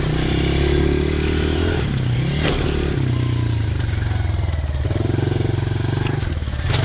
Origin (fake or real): real